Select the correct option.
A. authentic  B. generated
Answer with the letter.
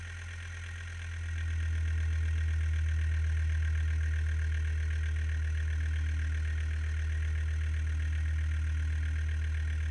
A